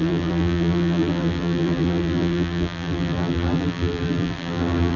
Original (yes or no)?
no